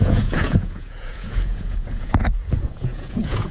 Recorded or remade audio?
remade